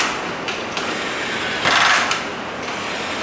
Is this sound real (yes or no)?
yes